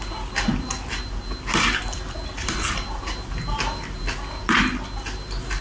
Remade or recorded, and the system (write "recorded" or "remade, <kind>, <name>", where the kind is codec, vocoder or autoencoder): recorded